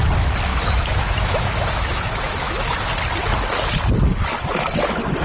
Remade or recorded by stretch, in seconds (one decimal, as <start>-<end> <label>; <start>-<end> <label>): 0.0-0.5 recorded; 0.5-2.9 remade; 2.9-5.2 recorded